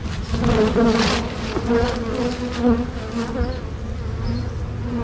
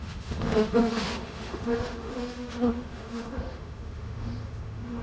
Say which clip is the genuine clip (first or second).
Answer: first